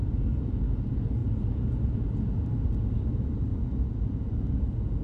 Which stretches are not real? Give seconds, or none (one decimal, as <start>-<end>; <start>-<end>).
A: 3.5-4.6

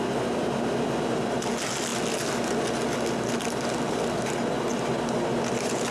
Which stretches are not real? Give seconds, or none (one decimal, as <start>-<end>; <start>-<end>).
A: none

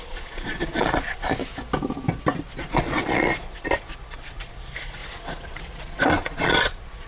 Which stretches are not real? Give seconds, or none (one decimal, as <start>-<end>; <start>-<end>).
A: 0.0-1.4; 2.6-7.1